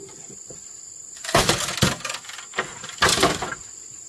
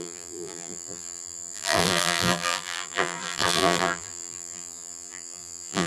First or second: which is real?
first